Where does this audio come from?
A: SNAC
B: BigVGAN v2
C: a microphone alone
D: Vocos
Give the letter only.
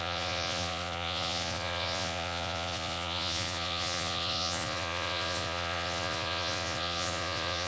D